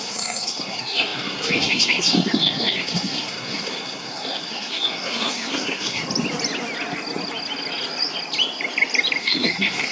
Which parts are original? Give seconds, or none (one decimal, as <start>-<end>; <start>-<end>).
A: 6.0-9.2